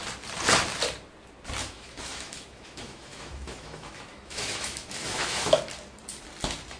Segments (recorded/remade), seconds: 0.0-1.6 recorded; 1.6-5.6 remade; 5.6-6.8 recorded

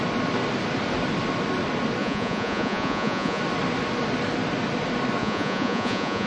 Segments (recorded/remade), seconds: 0.0-2.0 recorded; 2.0-3.4 remade; 3.4-5.2 recorded; 5.2-6.3 remade

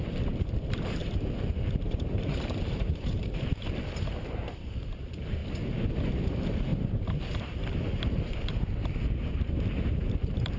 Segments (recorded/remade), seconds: 0.0-5.4 remade; 5.4-6.0 recorded; 6.0-10.6 remade

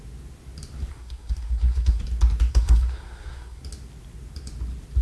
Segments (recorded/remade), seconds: 0.0-0.9 recorded; 0.9-2.0 remade; 2.0-2.5 recorded; 2.5-3.6 remade; 3.6-5.0 recorded

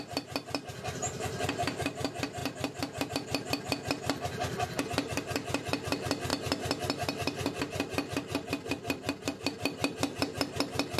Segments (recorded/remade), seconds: 0.0-11.0 recorded